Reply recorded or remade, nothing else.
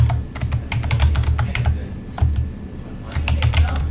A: recorded